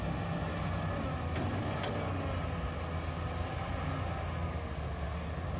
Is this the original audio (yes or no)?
yes